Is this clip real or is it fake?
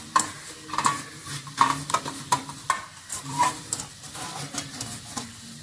fake